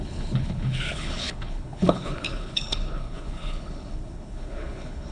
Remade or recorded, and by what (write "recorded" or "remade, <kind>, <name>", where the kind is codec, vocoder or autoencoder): remade, codec, HILCodec